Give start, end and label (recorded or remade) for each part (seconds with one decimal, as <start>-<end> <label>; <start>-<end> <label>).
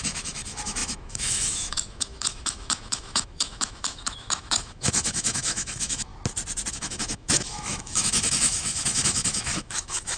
0.0-6.1 remade; 6.1-6.7 recorded; 6.7-10.2 remade